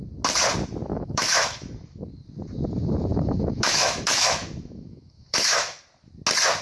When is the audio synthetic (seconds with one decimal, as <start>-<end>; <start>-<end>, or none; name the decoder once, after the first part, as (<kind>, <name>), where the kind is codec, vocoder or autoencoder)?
0.9-2.0 (autoencoder, DAC-VAE); 3.1-5.8